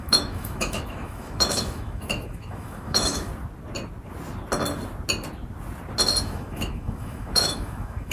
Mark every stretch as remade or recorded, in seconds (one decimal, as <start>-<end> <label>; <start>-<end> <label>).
0.0-3.3 remade; 3.3-6.2 recorded; 6.2-8.1 remade